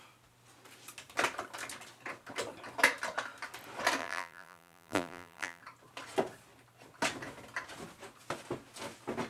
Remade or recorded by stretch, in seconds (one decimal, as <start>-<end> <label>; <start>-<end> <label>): 0.0-4.0 recorded; 4.0-5.6 remade; 5.6-9.3 recorded